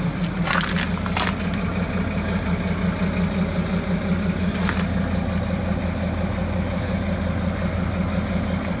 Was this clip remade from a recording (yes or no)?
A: no